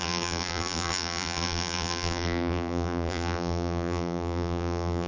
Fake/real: fake